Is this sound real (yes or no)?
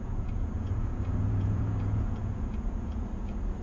no